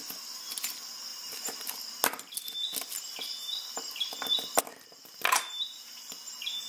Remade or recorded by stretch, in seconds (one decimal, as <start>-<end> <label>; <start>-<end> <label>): 0.0-1.1 recorded; 1.1-1.6 remade; 1.6-4.7 recorded; 4.7-6.1 remade; 6.1-6.7 recorded